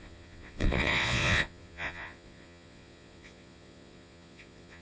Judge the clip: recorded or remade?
remade